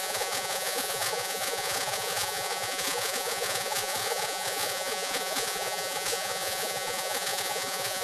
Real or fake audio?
fake